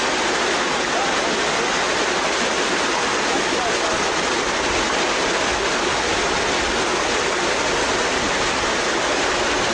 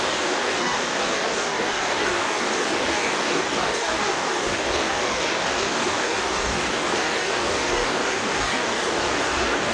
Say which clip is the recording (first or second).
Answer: first